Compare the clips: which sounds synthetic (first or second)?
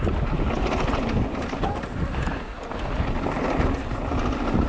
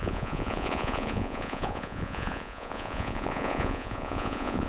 second